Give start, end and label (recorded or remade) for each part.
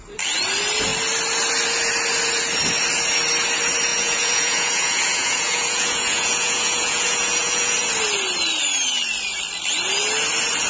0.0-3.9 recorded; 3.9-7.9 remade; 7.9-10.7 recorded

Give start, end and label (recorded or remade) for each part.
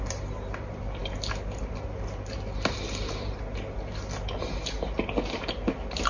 0.0-6.1 recorded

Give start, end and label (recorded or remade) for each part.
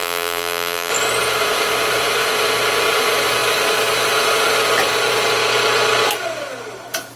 0.0-0.9 remade; 0.9-7.2 recorded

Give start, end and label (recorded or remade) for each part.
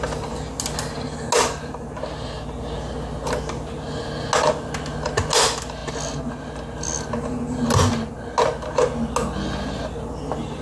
0.0-10.6 recorded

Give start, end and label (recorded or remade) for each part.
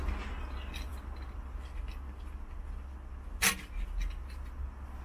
0.0-5.0 recorded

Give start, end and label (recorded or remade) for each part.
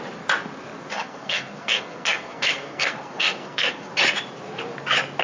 0.0-0.9 recorded; 0.9-3.9 remade; 3.9-5.2 recorded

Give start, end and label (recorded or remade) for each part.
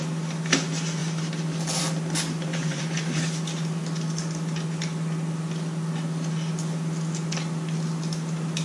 0.0-2.5 recorded; 2.5-3.2 remade; 3.2-8.6 recorded